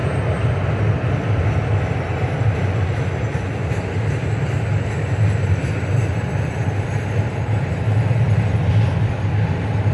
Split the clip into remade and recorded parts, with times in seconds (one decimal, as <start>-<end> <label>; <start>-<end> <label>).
0.0-9.9 recorded